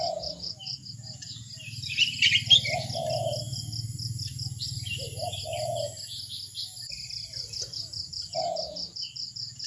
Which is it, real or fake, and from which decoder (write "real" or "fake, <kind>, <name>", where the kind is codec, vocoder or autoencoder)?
real